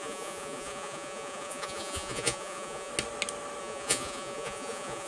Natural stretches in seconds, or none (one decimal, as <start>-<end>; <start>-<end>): 2.9-3.6

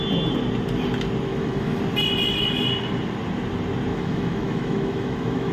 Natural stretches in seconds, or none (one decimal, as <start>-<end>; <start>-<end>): 0.0-1.3; 1.8-3.9

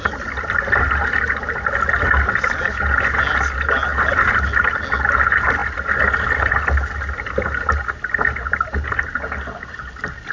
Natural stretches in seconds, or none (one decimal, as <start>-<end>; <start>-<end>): 0.0-10.3

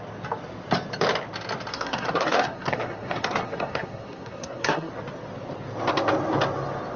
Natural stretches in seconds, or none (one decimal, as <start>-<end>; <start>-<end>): 0.0-1.7; 4.9-7.0

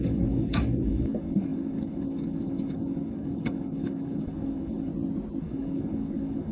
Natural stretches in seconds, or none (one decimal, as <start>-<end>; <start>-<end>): 4.9-5.4